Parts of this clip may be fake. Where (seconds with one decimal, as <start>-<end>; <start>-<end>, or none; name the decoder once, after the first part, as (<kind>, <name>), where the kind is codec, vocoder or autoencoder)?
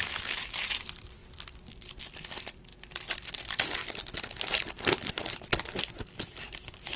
0.0-2.7 (vocoder, BigVGAN v2); 3.3-7.0